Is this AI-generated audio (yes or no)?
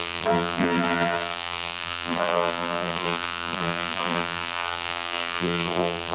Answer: yes